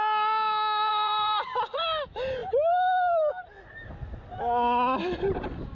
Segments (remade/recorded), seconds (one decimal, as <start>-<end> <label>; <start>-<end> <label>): 0.0-0.9 recorded; 0.9-1.8 remade; 1.8-5.8 recorded